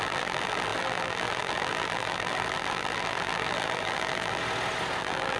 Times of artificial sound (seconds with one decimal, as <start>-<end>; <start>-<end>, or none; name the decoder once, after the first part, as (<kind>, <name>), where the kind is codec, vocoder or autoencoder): 0.0-4.4 (vocoder, BigVGAN v2); 5.0-5.4